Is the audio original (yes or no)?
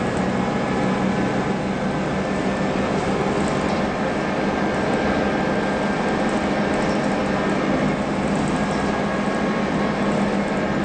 yes